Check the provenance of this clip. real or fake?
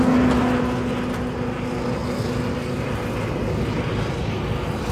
real